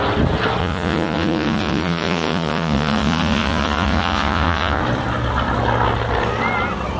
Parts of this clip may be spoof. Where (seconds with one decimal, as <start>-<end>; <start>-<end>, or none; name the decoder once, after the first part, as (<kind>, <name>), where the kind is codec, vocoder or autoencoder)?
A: 0.6-4.8 (vocoder, Vocos)